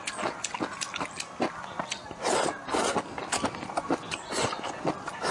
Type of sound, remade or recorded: recorded